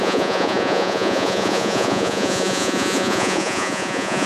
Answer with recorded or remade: remade